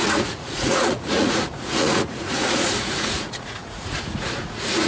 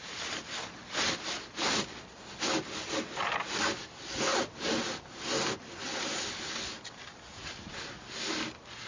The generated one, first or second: first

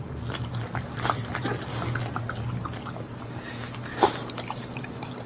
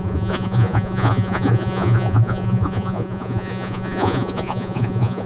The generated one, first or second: second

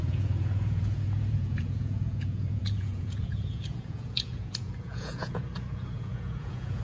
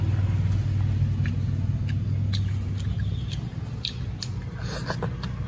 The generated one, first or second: first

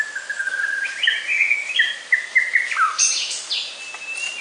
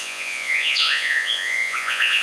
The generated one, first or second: second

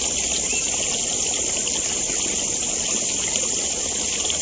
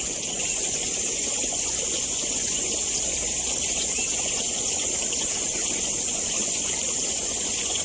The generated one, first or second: second